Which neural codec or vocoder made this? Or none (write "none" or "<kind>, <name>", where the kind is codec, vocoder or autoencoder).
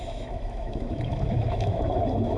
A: autoencoder, DAC-VAE